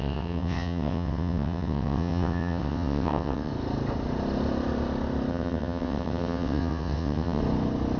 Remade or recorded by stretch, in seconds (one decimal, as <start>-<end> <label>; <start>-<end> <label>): 0.0-3.5 remade; 3.5-5.3 recorded; 5.3-7.4 remade; 7.4-8.0 recorded